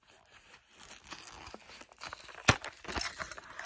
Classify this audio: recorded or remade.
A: recorded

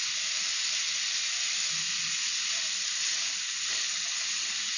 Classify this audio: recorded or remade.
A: recorded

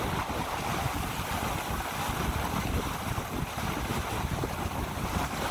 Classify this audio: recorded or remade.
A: recorded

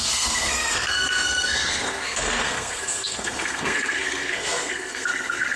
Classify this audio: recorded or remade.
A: remade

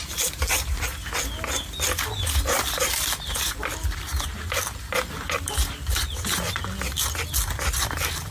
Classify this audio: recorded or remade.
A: recorded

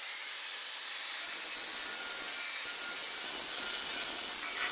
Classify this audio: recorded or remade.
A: recorded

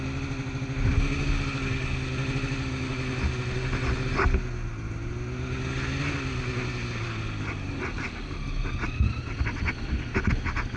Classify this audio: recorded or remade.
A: recorded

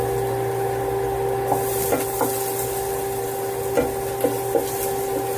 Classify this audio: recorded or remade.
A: recorded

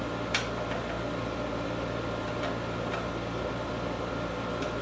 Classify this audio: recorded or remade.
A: recorded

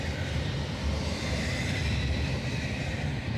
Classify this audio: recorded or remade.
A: remade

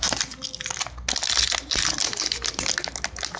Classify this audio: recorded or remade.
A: recorded